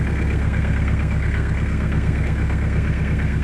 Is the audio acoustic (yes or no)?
no